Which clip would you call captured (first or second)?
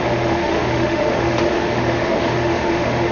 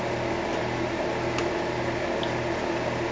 second